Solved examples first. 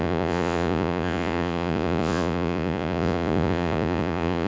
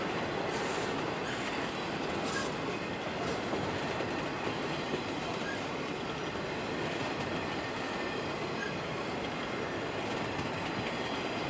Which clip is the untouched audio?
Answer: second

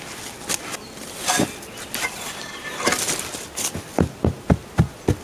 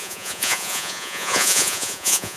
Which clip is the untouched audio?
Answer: first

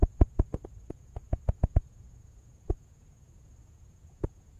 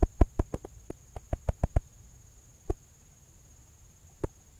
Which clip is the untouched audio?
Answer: second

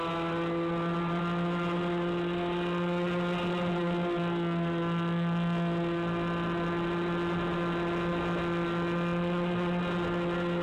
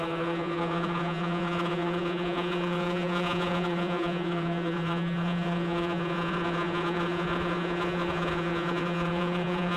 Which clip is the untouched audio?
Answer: first